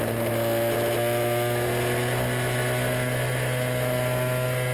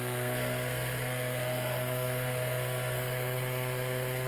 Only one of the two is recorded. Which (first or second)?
first